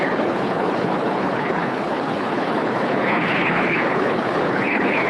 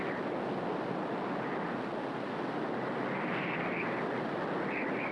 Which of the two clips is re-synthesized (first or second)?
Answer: first